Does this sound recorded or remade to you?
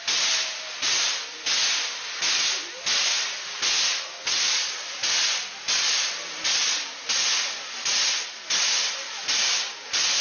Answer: recorded